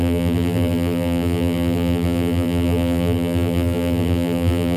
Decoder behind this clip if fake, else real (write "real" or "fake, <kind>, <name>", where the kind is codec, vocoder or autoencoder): fake, vocoder, BigVGAN v2